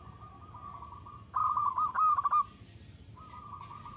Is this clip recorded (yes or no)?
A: yes